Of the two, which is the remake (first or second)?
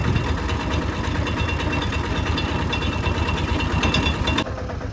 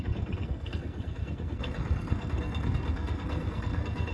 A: second